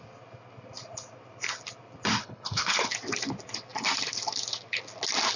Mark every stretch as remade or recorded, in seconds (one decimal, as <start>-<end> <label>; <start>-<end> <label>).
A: 0.0-2.2 recorded; 2.2-2.9 remade; 2.9-5.4 recorded